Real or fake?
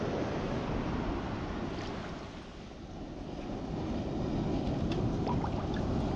real